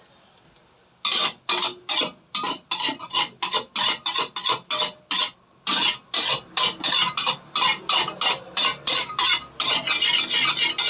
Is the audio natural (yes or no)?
yes